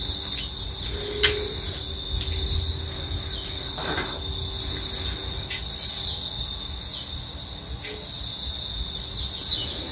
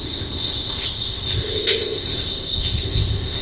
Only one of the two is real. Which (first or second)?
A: first